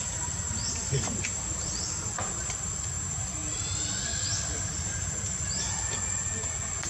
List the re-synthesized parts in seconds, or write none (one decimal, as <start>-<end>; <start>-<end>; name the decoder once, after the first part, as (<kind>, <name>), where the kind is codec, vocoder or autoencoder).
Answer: 0.0-4.1 (vocoder, BigVGAN v2); 4.7-6.9